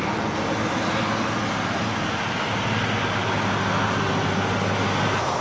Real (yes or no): yes